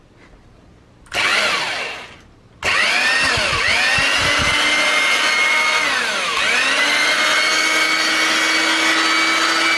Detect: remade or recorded recorded